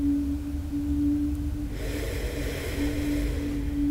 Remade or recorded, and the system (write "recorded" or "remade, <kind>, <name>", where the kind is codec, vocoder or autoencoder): recorded